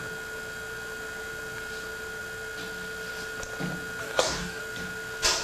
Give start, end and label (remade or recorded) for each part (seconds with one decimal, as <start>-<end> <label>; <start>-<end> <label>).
0.0-4.0 recorded; 4.0-4.6 remade; 4.6-5.4 recorded